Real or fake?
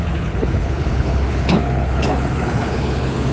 fake